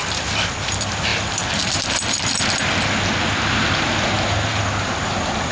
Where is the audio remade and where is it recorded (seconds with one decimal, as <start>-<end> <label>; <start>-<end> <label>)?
0.0-5.5 recorded